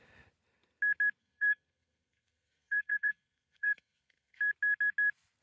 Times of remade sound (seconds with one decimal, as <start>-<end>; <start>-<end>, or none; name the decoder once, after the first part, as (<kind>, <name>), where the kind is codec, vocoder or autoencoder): 1.2-4.4 (codec, SNAC)